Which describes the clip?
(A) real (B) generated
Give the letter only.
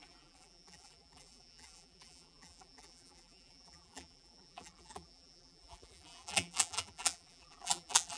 B